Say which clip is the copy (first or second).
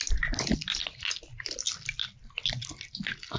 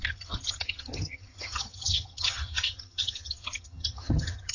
second